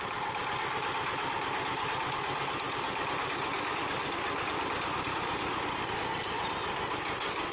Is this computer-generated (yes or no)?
no